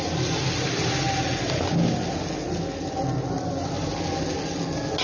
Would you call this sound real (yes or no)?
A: yes